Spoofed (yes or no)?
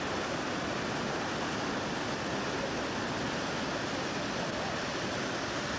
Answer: no